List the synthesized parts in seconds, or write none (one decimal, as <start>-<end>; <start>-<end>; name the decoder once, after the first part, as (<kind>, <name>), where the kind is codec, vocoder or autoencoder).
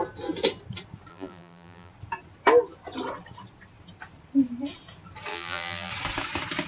1.1-1.9 (vocoder, BigVGAN v2); 5.3-5.9